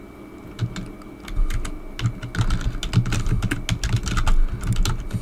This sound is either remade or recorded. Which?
recorded